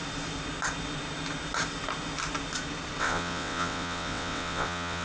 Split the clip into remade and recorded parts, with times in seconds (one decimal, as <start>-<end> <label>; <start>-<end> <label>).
0.0-3.0 recorded; 3.0-5.0 remade